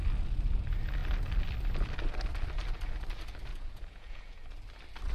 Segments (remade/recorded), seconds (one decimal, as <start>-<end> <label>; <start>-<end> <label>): 0.0-3.5 recorded; 3.5-4.4 remade; 4.4-5.1 recorded